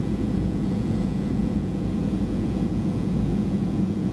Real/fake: fake